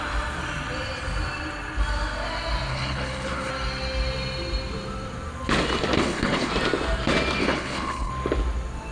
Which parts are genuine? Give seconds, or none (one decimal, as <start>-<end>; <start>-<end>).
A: 0.0-2.7; 3.5-6.0; 6.5-7.4; 8.1-8.9